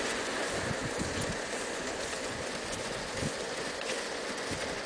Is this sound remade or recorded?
remade